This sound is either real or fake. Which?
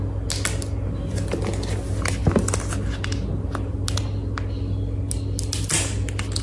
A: real